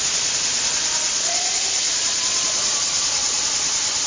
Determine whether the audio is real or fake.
fake